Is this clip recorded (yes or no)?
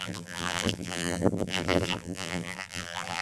no